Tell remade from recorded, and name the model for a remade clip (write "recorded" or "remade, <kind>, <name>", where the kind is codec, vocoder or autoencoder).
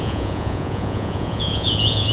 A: remade, vocoder, Vocos